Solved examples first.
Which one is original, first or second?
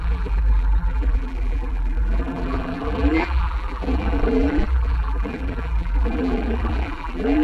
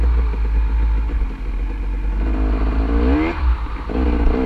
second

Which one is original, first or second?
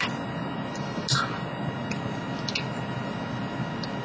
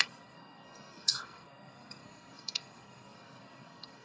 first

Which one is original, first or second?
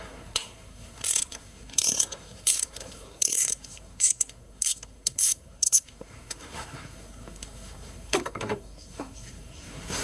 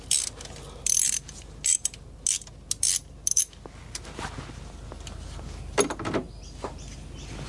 second